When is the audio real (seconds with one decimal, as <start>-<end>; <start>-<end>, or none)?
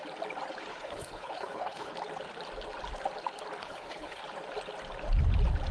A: 0.0-0.7; 1.9-3.6; 4.2-5.7